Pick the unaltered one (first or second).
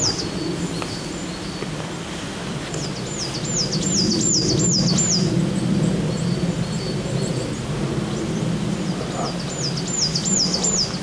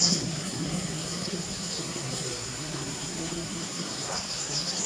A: first